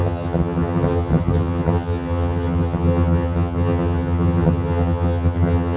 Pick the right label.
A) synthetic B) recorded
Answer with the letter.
A